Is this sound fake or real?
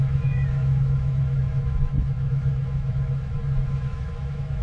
fake